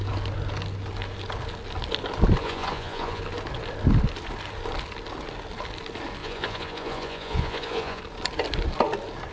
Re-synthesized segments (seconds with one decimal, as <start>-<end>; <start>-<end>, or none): 2.4-3.2; 6.2-8.0